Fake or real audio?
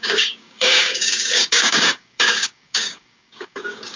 fake